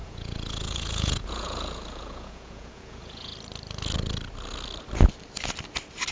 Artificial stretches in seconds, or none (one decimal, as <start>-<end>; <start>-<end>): 0.0-3.3